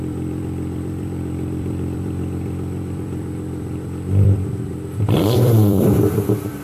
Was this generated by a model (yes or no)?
yes